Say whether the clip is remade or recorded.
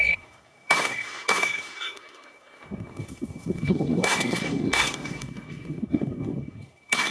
remade